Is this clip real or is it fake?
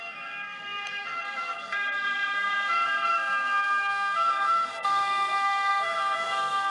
fake